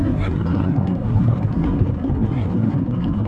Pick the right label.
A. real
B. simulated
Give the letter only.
B